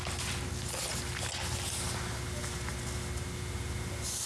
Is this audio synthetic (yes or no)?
no